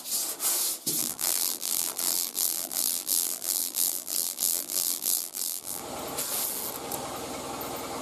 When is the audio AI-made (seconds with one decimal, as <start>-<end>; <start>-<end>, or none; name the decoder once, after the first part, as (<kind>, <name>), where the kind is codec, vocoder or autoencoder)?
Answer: 1.0-5.8 (vocoder, BigVGAN v2)

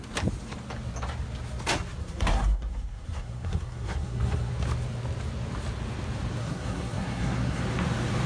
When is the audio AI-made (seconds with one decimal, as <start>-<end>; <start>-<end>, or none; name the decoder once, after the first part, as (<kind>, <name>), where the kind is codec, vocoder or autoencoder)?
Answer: 2.0-4.5 (codec, SNAC); 6.4-7.6

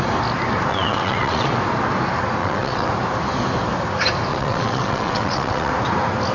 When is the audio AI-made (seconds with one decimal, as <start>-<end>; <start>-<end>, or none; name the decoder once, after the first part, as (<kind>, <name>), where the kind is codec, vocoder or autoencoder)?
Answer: 0.7-1.5 (vocoder, WaveNeXt); 2.4-2.9; 4.3-5.7

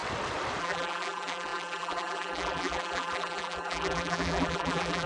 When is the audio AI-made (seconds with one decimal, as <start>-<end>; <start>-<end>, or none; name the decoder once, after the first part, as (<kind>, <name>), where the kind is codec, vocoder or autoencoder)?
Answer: 0.6-5.1 (vocoder, BigVGAN v2)

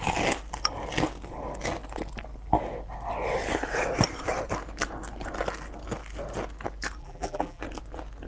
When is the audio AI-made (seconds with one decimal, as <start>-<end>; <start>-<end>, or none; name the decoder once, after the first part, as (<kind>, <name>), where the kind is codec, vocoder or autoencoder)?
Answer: 7.0-7.6 (vocoder, BigVGAN v2)

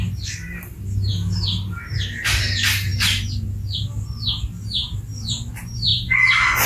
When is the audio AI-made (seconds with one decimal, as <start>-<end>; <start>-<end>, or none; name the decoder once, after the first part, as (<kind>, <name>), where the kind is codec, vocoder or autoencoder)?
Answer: none